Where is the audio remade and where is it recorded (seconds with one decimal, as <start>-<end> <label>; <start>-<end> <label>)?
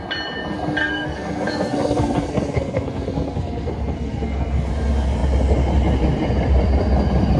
0.0-0.8 recorded; 0.8-4.7 remade; 4.7-7.4 recorded